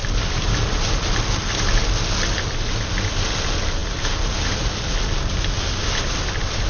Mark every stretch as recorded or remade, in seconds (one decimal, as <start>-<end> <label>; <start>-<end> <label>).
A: 0.0-6.7 recorded